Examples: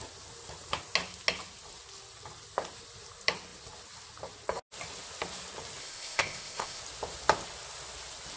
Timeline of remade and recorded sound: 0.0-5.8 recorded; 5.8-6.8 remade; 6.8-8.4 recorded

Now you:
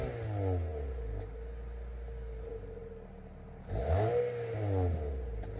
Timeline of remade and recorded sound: 0.0-5.6 recorded

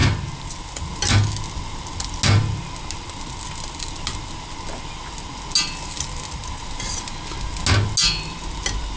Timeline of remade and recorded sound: 0.0-9.0 recorded

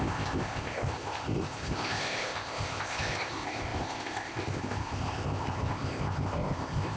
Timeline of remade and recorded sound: 0.0-7.0 remade

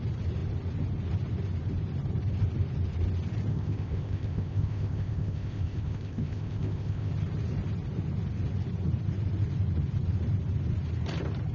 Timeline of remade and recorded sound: 0.0-3.5 recorded; 3.5-7.1 remade; 7.1-11.5 recorded